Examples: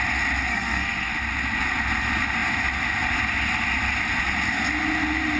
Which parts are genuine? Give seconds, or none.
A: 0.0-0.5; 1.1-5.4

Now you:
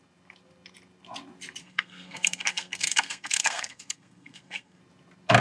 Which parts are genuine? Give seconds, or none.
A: 0.0-1.6; 4.8-5.4